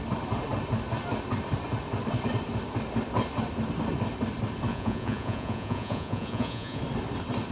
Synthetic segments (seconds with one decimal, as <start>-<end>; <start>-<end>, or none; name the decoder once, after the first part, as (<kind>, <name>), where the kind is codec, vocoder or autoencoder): 4.7-6.8 (vocoder, Vocos)